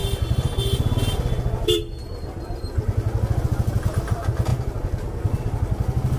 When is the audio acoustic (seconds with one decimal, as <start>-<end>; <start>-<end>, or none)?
0.0-6.2